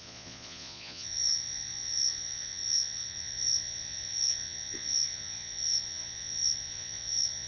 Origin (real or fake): fake